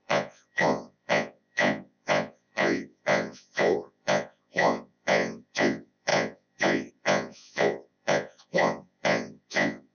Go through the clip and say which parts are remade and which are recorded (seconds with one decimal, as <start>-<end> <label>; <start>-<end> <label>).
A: 0.0-9.9 remade